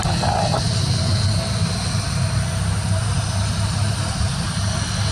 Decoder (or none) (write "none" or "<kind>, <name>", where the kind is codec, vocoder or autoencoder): none